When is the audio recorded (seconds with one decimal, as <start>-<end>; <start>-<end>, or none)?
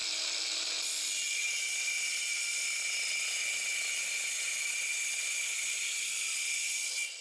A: 0.0-7.2